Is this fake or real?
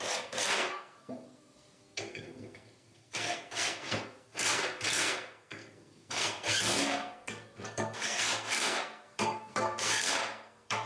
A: fake